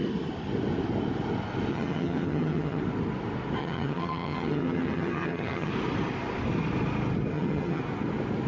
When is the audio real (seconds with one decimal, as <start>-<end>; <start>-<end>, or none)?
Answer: 0.0-1.7; 2.8-3.6; 5.7-7.3; 7.8-8.5